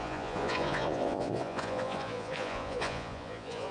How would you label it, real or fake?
fake